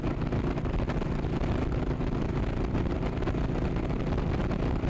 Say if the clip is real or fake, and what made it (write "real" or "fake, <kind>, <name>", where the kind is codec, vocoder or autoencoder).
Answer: real